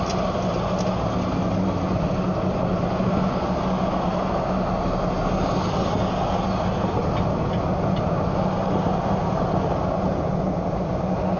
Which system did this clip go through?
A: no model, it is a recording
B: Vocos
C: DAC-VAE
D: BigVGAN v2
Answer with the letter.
A